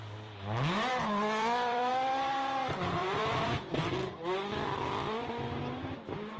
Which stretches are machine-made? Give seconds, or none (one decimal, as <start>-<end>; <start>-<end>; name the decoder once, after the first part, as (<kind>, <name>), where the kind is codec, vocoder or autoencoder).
0.9-1.9 (vocoder, BigVGAN v2); 3.0-3.8